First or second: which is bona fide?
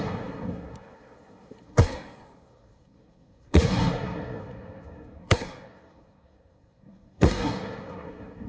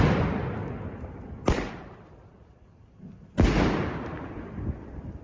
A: second